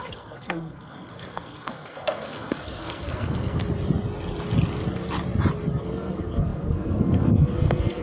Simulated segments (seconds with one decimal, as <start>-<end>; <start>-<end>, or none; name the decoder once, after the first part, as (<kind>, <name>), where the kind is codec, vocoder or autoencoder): 0.0-3.6 (codec, SNAC); 5.8-8.0